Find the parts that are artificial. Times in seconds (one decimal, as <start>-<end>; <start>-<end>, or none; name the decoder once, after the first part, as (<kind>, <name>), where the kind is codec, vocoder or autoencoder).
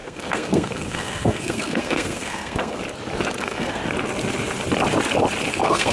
0.0-2.8 (codec, SNAC); 3.4-3.8; 5.5-5.9